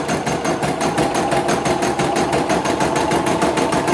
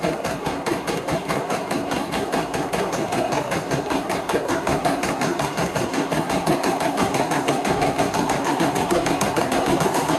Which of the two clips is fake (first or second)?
second